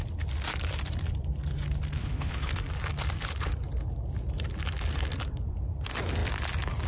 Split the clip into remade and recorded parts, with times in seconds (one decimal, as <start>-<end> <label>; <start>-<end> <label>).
0.0-2.0 recorded; 2.0-2.5 remade; 2.5-6.9 recorded